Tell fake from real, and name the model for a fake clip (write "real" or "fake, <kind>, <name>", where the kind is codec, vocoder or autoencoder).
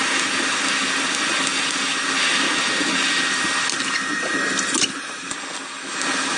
real